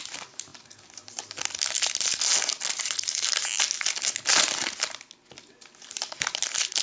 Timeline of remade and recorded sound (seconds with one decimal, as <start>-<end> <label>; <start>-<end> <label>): 0.0-6.8 recorded